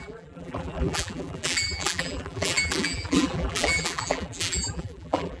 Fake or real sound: fake